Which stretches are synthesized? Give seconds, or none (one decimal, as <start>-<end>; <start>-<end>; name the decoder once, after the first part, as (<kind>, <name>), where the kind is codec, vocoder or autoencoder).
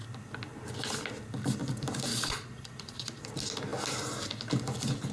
2.1-3.2 (vocoder, Vocos)